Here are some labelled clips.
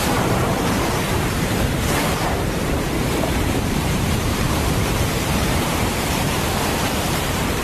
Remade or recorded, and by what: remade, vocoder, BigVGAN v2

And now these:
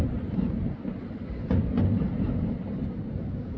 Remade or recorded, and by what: remade, vocoder, BigVGAN v2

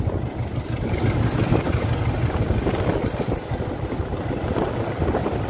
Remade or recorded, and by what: recorded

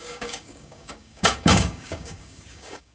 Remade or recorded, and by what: remade, codec, DAC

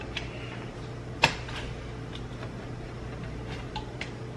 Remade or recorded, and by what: recorded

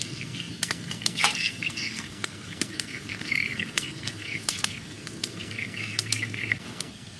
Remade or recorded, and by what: remade, codec, SNAC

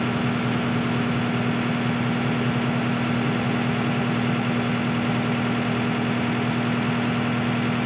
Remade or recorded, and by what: recorded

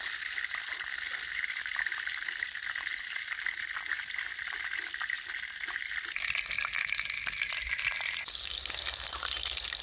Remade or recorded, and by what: recorded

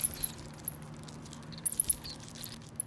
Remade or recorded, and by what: recorded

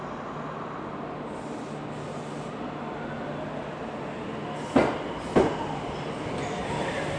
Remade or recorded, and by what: recorded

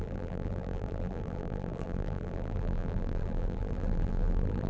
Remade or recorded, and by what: remade, vocoder, BigVGAN v2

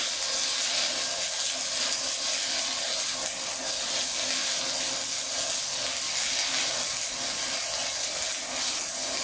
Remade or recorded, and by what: recorded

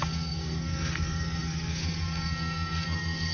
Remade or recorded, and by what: remade, codec, SNAC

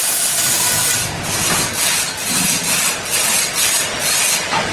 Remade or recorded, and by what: recorded